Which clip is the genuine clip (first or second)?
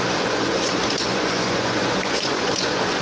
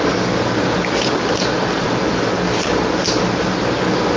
second